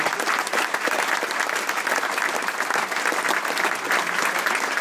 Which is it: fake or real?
real